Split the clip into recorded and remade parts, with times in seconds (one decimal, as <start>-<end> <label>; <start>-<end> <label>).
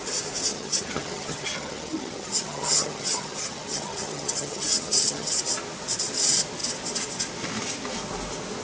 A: 0.0-0.5 recorded; 0.5-5.4 remade; 5.4-8.6 recorded